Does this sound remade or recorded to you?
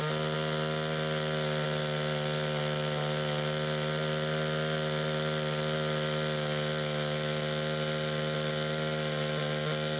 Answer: recorded